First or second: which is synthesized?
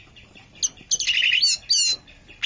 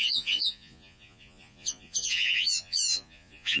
second